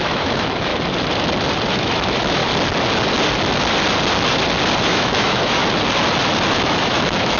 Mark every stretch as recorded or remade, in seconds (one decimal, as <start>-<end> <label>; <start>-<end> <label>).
0.0-0.7 remade; 0.7-1.7 recorded; 1.7-2.4 remade; 2.4-4.8 recorded; 4.8-5.6 remade; 5.6-6.5 recorded; 6.5-7.4 remade

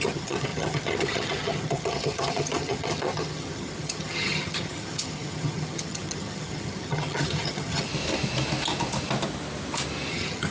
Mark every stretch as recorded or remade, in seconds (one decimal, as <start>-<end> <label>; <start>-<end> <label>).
0.0-7.9 remade; 7.9-10.1 recorded; 10.1-10.5 remade

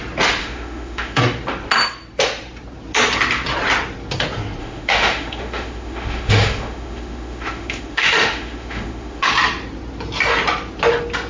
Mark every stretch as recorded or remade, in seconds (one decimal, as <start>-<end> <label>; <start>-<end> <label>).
0.0-0.4 recorded; 0.4-1.2 remade; 1.2-4.6 recorded; 4.6-9.3 remade; 9.3-11.3 recorded

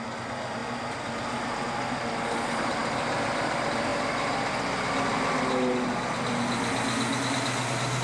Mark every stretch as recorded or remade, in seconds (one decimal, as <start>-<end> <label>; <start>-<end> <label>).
0.0-8.0 recorded

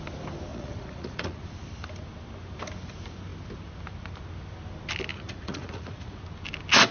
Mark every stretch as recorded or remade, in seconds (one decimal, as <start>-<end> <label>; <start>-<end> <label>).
0.0-0.5 recorded; 0.5-1.5 remade; 1.5-5.1 recorded; 5.1-6.2 remade; 6.2-6.9 recorded

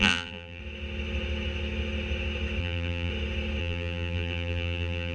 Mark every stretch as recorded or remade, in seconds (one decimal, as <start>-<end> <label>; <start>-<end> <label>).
0.0-0.6 remade; 0.6-2.6 recorded; 2.6-3.1 remade; 3.1-3.6 recorded; 3.6-5.1 remade

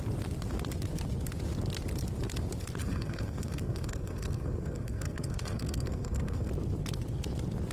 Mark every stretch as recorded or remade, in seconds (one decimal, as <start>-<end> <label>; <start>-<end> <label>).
0.0-2.8 recorded; 2.8-6.5 remade; 6.5-7.7 recorded

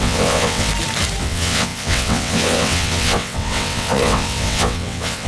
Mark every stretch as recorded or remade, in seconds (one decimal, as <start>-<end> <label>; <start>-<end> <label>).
0.0-0.7 remade; 0.7-1.2 recorded; 1.2-5.3 remade